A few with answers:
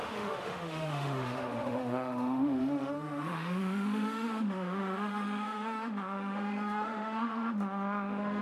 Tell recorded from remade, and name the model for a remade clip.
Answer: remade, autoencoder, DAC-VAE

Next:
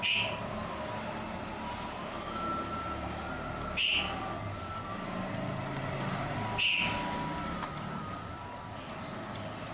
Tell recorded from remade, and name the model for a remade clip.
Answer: recorded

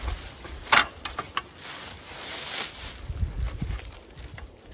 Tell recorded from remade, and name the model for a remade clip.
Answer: recorded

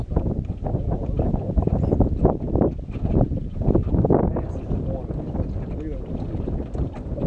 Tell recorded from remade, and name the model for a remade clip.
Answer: recorded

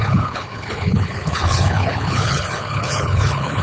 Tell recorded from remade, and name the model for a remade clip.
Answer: remade, codec, HILCodec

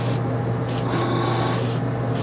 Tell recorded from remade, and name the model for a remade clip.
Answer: recorded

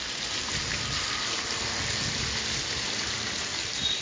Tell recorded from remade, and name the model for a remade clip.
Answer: recorded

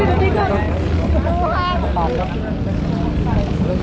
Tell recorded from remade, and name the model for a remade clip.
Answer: recorded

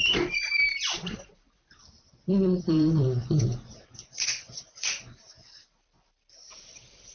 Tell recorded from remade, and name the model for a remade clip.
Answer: remade, vocoder, BigVGAN v2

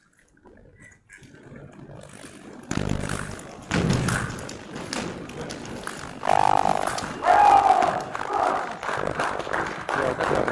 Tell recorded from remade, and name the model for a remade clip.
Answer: recorded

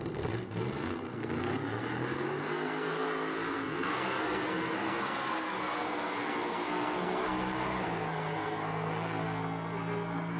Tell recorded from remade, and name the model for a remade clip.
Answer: remade, codec, SNAC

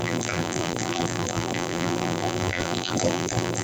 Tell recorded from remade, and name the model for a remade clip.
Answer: remade, vocoder, BigVGAN v2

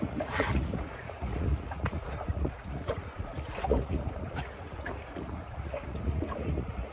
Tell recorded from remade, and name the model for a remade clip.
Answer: remade, vocoder, Vocos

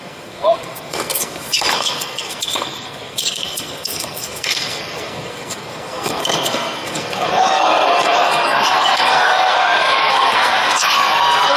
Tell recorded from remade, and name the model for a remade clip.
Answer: remade, codec, SNAC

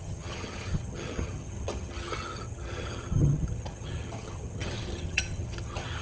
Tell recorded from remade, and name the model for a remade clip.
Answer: remade, vocoder, HiFi-GAN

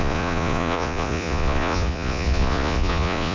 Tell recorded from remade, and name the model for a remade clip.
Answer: remade, vocoder, Vocos